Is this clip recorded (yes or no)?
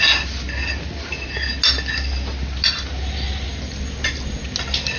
yes